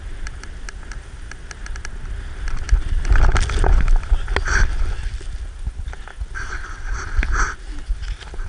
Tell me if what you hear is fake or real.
real